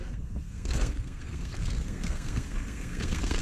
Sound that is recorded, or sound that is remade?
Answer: remade